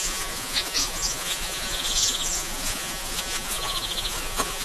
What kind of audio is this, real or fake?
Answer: fake